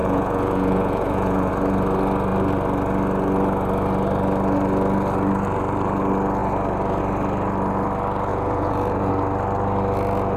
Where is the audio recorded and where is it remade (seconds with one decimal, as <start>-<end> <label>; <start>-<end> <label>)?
0.0-1.5 remade; 1.5-8.3 recorded; 8.3-9.1 remade; 9.1-10.4 recorded